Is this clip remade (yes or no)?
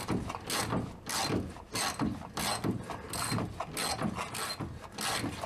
no